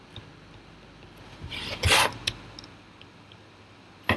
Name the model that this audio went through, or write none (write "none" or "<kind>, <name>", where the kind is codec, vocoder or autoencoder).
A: none